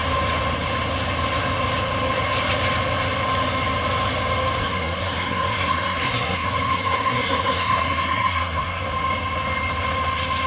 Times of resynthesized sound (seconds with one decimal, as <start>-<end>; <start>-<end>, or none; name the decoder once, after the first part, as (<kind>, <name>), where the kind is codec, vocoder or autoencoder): 4.6-8.8 (codec, SNAC)